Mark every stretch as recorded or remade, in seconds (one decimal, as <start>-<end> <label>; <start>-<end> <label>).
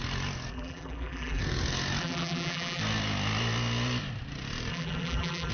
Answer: 0.0-0.5 recorded; 0.5-1.4 remade; 1.4-2.0 recorded; 2.0-2.8 remade; 2.8-4.7 recorded; 4.7-5.5 remade